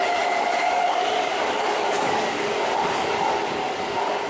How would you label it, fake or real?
fake